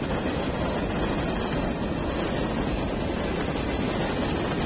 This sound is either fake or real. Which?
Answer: real